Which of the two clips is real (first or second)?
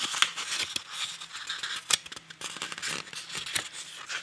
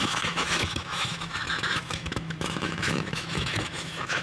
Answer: first